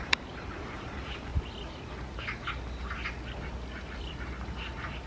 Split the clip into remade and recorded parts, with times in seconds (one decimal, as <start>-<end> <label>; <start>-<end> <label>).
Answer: 0.0-1.3 remade; 1.3-4.0 recorded; 4.0-5.1 remade

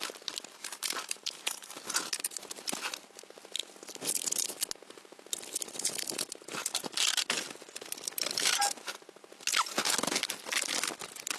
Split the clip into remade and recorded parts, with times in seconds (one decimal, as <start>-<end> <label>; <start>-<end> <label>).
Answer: 0.0-0.6 recorded; 0.6-1.8 remade; 1.8-11.4 recorded

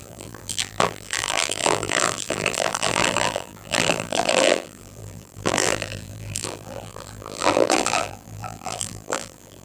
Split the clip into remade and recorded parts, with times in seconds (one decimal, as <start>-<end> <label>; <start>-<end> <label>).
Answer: 0.0-9.6 remade

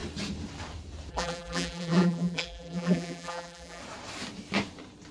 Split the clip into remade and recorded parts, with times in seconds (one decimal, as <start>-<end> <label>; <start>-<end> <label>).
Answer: 0.0-1.1 recorded; 1.1-3.8 remade; 3.8-5.1 recorded

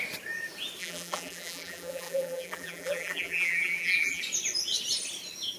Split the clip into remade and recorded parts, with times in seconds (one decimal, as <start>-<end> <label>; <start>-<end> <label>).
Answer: 0.0-0.8 recorded; 0.8-4.2 remade; 4.2-5.6 recorded

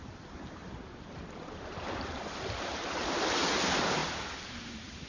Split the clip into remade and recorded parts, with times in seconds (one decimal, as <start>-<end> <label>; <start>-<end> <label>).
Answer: 0.0-4.0 remade; 4.0-4.6 recorded; 4.6-5.1 remade